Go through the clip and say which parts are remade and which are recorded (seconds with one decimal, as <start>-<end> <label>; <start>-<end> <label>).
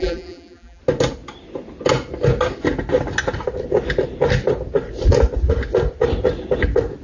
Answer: 0.0-0.8 remade; 0.8-7.0 recorded